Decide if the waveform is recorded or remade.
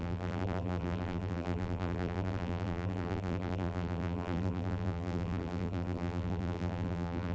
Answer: remade